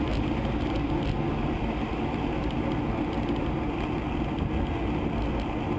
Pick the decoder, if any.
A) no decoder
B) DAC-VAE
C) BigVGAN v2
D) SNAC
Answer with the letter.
A